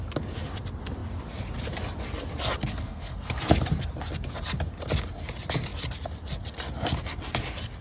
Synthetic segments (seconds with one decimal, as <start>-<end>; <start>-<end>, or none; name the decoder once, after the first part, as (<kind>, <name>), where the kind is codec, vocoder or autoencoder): 2.7-3.4 (codec, SNAC)